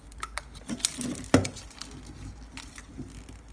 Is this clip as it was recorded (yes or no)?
yes